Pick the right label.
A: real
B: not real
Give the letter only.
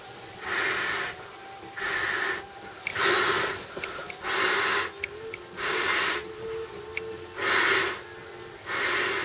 A